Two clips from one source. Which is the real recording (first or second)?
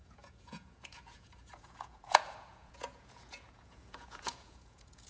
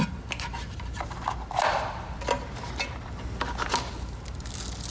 second